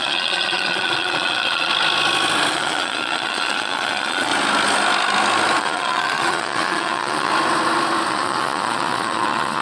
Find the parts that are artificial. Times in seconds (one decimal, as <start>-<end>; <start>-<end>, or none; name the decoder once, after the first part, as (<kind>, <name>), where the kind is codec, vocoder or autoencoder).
0.0-1.7 (vocoder, Vocos); 2.5-4.3; 5.6-7.3; 8.1-9.6